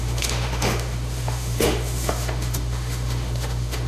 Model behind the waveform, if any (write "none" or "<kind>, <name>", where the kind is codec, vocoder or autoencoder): autoencoder, DAC-VAE